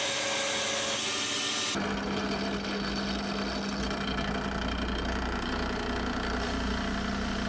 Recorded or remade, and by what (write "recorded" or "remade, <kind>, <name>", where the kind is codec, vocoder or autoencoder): recorded